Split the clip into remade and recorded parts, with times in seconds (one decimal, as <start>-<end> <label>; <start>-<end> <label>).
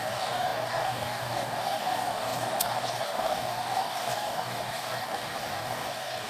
0.0-6.3 remade